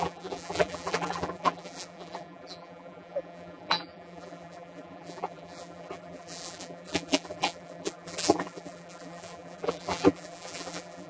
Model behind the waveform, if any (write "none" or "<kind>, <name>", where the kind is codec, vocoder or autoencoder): vocoder, BigVGAN v2